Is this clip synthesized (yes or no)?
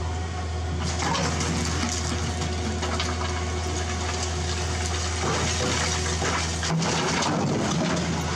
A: no